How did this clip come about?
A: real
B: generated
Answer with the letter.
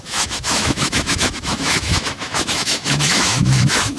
B